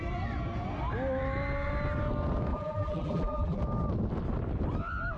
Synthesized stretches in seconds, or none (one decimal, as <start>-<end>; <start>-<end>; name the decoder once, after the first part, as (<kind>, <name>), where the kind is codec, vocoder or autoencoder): 2.5-3.6 (vocoder, BigVGAN v2)